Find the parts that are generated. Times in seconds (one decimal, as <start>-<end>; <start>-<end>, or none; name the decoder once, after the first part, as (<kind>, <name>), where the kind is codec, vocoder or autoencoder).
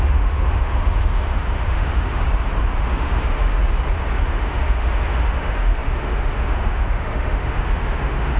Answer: 0.0-2.2 (autoencoder, DAC-VAE); 2.8-3.5; 4.2-8.4